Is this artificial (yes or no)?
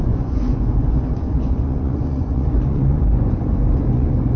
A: yes